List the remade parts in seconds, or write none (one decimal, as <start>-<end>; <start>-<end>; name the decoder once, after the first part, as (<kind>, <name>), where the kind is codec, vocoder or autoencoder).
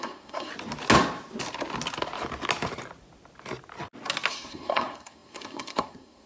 0.0-0.5 (codec, SNAC); 4.3-6.3